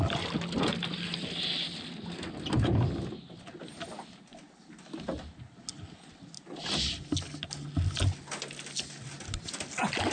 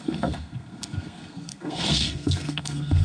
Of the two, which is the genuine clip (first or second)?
first